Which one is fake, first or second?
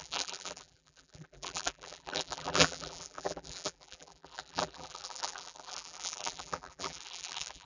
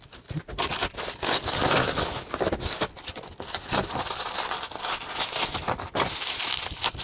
first